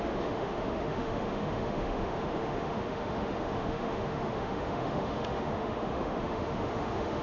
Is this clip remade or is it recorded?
remade